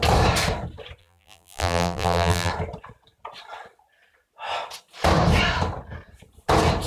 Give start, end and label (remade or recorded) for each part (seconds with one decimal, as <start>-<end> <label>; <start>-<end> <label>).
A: 0.0-1.0 recorded; 1.0-2.5 remade; 2.5-6.9 recorded